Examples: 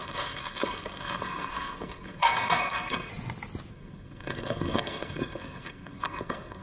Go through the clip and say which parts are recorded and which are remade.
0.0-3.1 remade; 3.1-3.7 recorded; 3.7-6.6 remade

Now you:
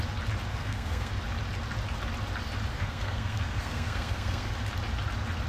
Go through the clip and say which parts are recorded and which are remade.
0.0-0.5 recorded; 0.5-1.1 remade; 1.1-2.7 recorded; 2.7-4.5 remade; 4.5-5.5 recorded

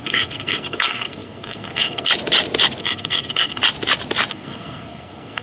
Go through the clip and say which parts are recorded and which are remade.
0.0-2.1 remade; 2.1-2.8 recorded; 2.8-3.6 remade; 3.6-4.3 recorded; 4.3-5.4 remade